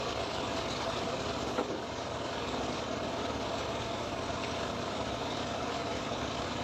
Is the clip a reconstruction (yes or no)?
yes